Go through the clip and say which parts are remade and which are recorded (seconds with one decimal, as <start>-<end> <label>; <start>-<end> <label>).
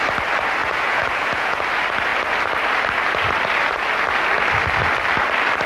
0.0-0.6 recorded; 0.6-1.6 remade; 1.6-5.7 recorded